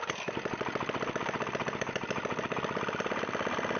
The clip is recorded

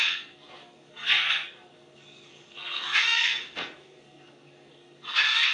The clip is remade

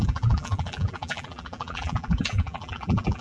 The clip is remade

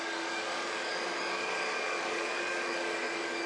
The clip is remade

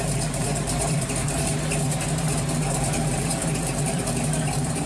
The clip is remade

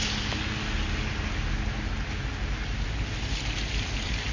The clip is recorded